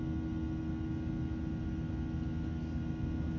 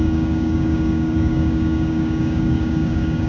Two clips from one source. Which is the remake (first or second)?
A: second